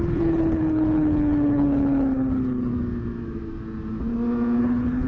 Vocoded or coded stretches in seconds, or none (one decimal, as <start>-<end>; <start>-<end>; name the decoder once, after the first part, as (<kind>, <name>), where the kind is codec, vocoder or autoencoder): 0.0-2.7 (codec, HILCodec); 4.6-5.1